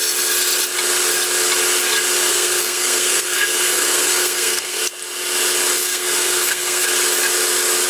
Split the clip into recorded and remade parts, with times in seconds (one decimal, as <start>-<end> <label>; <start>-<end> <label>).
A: 0.0-2.3 recorded; 2.3-4.8 remade; 4.8-5.8 recorded; 5.8-6.9 remade; 6.9-7.9 recorded